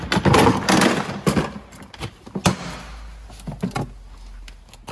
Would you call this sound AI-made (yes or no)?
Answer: no